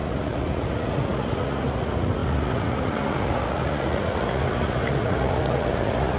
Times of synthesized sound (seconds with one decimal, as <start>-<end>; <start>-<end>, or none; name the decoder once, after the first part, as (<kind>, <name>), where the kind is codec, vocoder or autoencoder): 0.0-6.2 (vocoder, Vocos)